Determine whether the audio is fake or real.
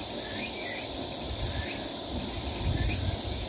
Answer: real